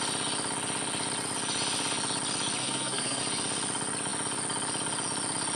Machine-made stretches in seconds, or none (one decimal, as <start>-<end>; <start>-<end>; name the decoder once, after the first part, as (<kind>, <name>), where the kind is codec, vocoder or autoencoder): 2.6-3.2 (codec, SNAC)